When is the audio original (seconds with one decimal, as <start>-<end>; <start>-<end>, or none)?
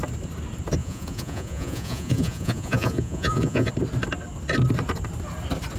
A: 0.0-0.8; 3.7-5.8